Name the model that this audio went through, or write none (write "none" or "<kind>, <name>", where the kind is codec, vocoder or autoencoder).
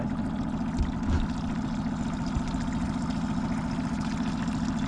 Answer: none